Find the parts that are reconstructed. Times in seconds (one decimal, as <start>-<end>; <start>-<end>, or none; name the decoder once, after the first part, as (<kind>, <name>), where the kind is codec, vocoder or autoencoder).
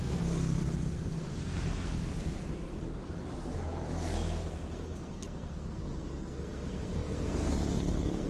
0.0-8.3 (codec, SNAC)